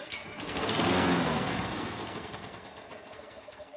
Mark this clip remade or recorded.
remade